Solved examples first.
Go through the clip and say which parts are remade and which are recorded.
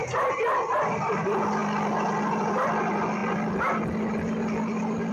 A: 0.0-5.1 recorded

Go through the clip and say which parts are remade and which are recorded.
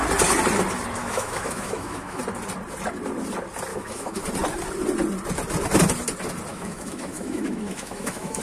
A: 0.0-1.0 recorded; 1.0-2.2 remade; 2.2-3.7 recorded; 3.7-4.2 remade; 4.2-6.5 recorded; 6.5-8.4 remade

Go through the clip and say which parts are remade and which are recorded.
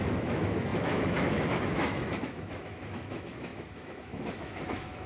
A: 0.0-5.1 remade